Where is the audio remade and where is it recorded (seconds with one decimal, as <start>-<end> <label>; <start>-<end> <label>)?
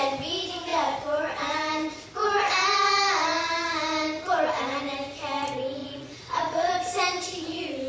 0.0-5.8 recorded; 5.8-6.7 remade; 6.7-7.9 recorded